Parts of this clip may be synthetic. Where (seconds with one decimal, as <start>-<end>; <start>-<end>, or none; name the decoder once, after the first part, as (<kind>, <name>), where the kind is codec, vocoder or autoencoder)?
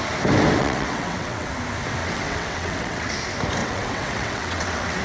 0.6-1.5 (vocoder, WaveNeXt); 2.0-3.1; 3.6-5.0